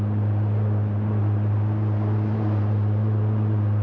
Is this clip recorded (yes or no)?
yes